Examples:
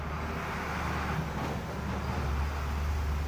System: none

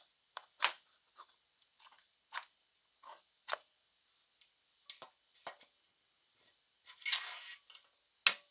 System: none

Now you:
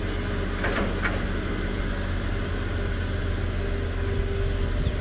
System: none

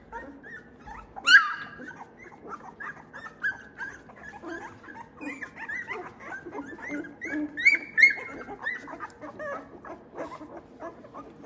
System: none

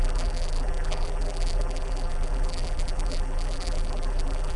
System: vocoder, BigVGAN v2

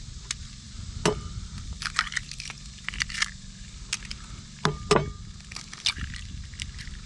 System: none